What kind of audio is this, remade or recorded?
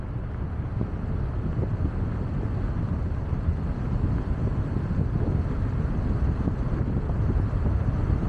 recorded